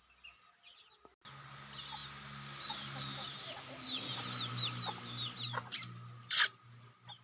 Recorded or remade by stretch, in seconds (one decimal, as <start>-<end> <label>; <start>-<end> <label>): 0.0-7.2 recorded